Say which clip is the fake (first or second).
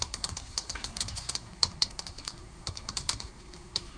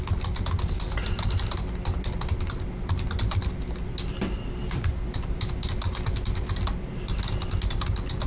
first